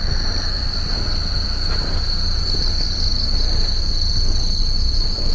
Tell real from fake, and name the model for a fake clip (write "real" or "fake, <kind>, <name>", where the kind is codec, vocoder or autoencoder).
real